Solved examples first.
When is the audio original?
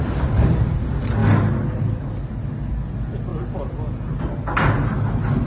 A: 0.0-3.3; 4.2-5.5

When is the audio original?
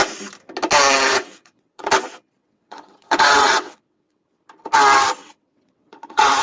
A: 0.0-1.1; 1.9-2.4; 4.4-5.2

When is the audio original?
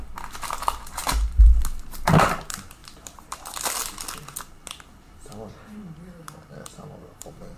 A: 0.0-7.6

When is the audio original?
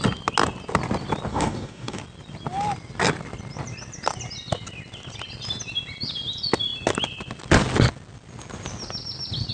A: 0.0-1.3; 2.0-9.5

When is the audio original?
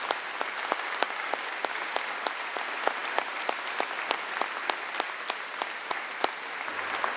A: 0.0-0.6; 1.6-7.2